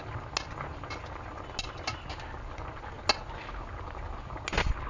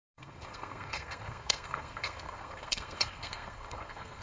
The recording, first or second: first